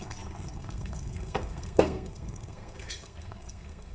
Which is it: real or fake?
fake